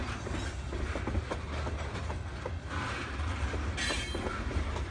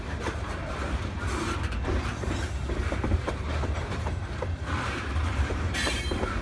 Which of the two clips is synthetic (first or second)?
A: second